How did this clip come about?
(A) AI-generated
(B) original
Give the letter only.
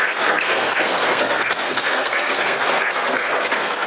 A